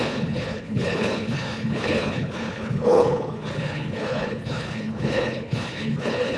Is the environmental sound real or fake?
fake